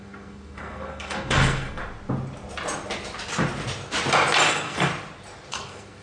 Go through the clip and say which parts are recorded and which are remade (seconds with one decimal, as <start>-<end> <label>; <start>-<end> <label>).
0.0-1.8 remade; 1.8-4.5 recorded; 4.5-4.9 remade; 4.9-5.5 recorded; 5.5-6.0 remade